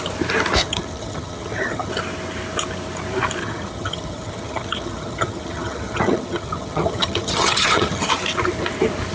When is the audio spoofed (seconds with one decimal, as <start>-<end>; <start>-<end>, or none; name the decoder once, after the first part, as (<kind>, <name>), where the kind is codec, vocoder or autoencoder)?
0.6-1.9 (vocoder, HiFi-GAN); 3.4-8.1